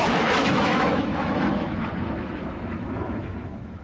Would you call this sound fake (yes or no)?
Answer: yes